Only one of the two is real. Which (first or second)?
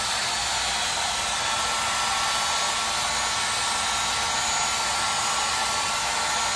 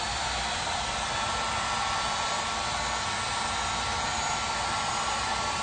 first